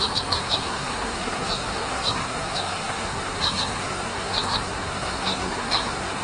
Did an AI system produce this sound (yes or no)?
yes